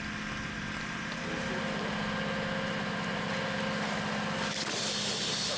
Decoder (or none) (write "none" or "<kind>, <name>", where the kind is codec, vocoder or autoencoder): none